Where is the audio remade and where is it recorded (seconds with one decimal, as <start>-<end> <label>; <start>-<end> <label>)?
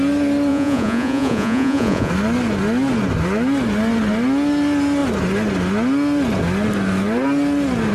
0.0-0.5 recorded; 0.5-2.1 remade; 2.1-7.9 recorded